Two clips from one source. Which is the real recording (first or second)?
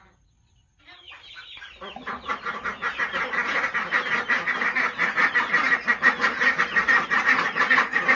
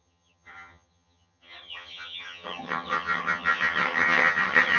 first